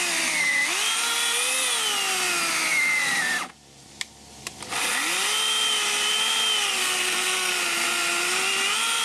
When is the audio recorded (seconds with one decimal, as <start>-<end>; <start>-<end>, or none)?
0.0-6.8; 7.5-9.0